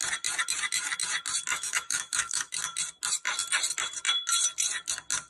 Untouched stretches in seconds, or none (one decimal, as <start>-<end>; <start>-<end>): 0.0-1.5; 2.5-5.3